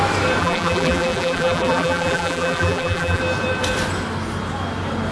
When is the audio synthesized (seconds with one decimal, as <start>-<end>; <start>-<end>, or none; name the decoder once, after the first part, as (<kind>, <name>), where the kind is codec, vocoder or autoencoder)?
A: 0.4-3.2 (vocoder, BigVGAN v2)